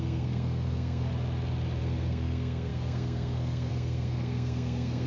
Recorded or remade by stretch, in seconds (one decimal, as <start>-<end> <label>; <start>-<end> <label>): 0.0-1.1 remade; 1.1-1.8 recorded; 1.8-5.1 remade